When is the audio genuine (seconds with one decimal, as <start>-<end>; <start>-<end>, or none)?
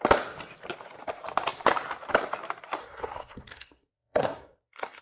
0.0-2.8